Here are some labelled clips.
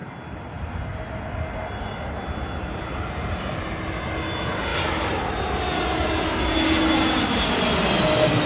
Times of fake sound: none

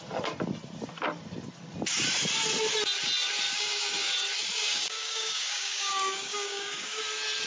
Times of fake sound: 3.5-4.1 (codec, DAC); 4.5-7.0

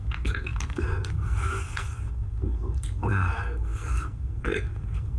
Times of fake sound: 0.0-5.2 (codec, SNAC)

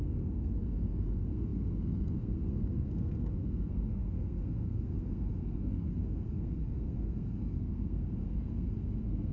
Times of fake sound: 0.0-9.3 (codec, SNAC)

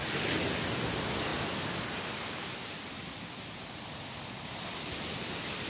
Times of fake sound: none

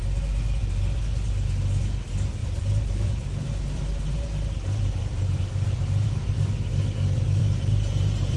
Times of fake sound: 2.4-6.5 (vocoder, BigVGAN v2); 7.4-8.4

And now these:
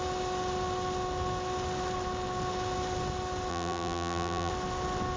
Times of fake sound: 3.5-4.5 (vocoder, BigVGAN v2)